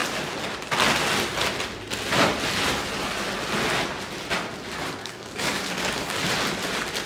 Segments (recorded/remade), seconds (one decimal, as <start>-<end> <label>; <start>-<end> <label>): 0.0-5.0 recorded; 5.0-6.3 remade; 6.3-7.1 recorded